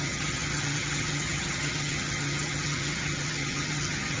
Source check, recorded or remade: remade